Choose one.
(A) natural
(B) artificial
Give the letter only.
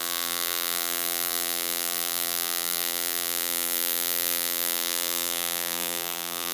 B